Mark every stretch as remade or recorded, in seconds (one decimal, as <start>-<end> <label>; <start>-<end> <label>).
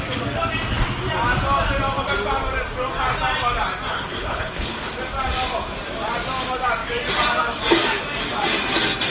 0.0-3.9 recorded; 3.9-4.9 remade; 4.9-9.1 recorded